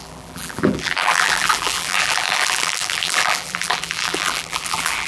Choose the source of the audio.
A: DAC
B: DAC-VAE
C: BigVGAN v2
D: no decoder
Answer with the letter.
C